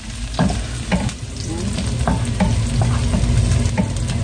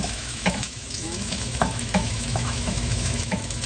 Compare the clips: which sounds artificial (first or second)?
second